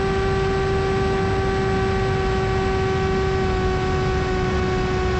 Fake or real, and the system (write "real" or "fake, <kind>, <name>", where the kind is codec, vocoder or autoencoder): real